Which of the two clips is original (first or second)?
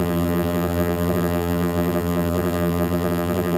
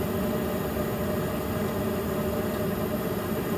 second